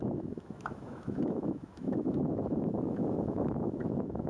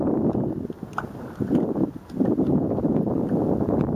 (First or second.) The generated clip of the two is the first